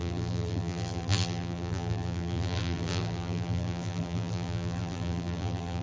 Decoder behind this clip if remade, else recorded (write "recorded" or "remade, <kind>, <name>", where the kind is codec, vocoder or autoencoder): remade, vocoder, BigVGAN v2